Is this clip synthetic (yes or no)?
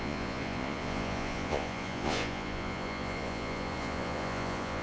yes